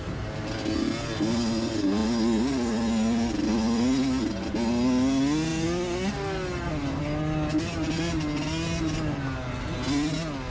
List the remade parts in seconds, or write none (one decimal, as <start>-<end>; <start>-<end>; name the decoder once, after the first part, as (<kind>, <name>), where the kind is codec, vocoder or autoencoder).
none

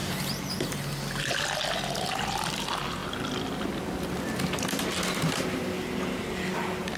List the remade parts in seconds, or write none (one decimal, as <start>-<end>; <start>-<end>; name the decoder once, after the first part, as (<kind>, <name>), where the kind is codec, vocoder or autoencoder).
3.0-5.8 (vocoder, BigVGAN v2)

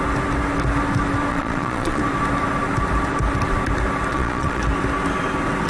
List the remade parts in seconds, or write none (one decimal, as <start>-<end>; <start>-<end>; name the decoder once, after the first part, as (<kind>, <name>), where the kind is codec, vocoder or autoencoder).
1.3-2.0 (vocoder, Vocos); 4.1-4.6

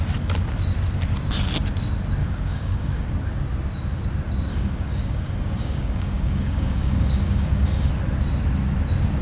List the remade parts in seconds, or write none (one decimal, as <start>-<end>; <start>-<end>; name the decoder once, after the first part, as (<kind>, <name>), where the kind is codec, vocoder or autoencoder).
2.2-3.1 (codec, DAC); 4.5-7.9

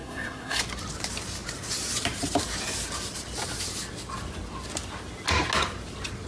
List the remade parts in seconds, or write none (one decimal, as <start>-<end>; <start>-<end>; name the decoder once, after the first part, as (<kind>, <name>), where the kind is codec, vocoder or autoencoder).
0.0-0.6 (codec, SNAC)

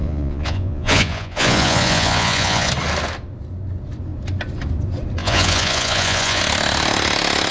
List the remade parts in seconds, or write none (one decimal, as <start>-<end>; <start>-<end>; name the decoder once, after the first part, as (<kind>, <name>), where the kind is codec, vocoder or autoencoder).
0.0-2.7 (vocoder, Vocos); 5.2-6.4